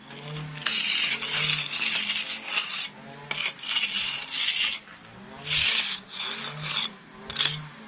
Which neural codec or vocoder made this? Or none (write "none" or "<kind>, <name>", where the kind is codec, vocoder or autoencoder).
none